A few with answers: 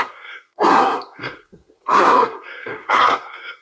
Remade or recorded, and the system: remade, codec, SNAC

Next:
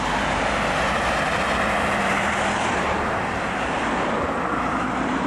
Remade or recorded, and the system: recorded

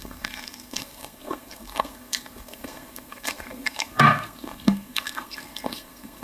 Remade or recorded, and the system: remade, codec, SNAC